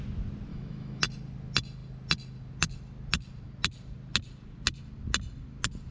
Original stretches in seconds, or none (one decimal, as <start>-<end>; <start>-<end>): 0.0-0.5; 1.0-5.9